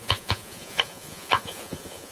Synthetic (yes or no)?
yes